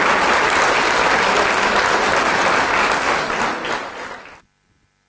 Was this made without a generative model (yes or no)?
yes